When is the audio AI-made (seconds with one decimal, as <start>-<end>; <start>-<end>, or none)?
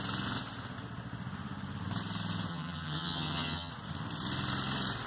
2.5-3.7